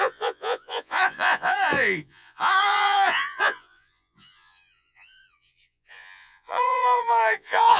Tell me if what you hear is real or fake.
fake